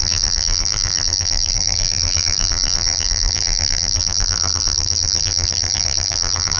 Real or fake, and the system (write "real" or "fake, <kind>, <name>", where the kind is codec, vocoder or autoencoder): fake, vocoder, BigVGAN v2